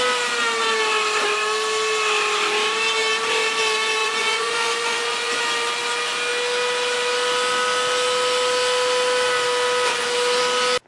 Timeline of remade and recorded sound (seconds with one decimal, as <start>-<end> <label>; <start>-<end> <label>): 0.0-4.0 recorded; 4.0-5.4 remade; 5.4-10.9 recorded